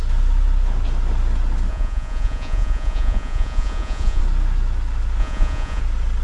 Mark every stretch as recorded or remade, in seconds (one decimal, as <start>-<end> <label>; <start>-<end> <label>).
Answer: 0.0-1.7 recorded; 1.7-4.2 remade; 4.2-5.2 recorded; 5.2-5.8 remade; 5.8-6.2 recorded